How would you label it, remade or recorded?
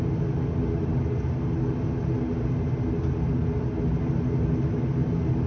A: recorded